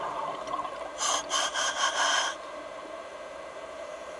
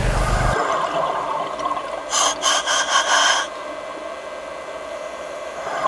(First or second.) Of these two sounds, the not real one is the first